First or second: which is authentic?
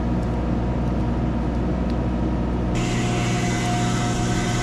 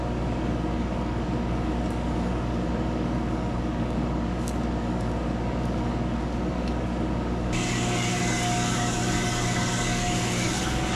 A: first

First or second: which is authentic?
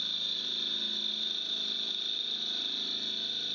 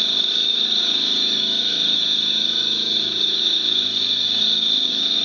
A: first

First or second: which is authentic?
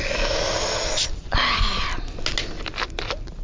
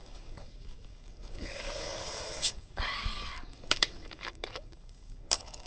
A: first